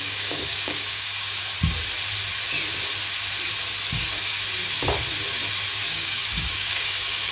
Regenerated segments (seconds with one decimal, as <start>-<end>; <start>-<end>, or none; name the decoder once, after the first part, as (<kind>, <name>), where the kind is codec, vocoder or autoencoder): 0.0-1.4 (codec, DAC); 5.8-7.3

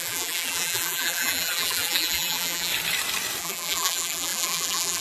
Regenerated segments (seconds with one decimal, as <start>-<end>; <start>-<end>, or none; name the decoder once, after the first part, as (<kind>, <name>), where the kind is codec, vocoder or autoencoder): 0.0-2.7 (vocoder, BigVGAN v2); 3.4-5.0

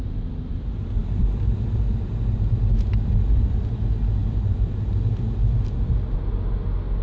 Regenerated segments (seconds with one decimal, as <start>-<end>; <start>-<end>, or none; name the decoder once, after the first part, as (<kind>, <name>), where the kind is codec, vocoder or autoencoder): 1.0-2.0 (vocoder, BigVGAN v2); 4.2-4.9

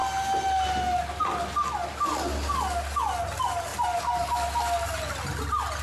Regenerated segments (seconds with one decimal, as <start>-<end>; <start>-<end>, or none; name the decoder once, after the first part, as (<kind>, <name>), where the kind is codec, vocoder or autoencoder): none